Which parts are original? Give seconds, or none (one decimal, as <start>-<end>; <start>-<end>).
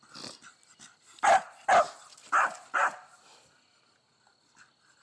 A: 0.0-5.0